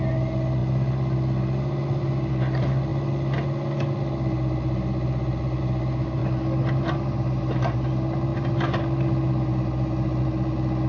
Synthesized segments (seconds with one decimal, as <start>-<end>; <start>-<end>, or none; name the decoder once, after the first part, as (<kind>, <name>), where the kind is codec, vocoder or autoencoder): none